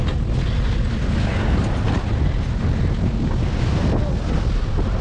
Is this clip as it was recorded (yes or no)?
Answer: yes